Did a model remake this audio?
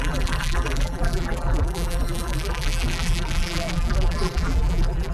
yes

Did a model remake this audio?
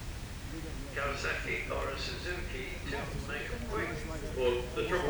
no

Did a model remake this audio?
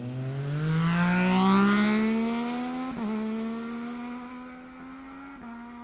no